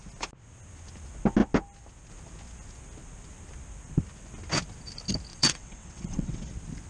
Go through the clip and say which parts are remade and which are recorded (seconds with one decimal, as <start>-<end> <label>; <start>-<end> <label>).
0.0-5.3 recorded; 5.3-6.5 remade; 6.5-6.9 recorded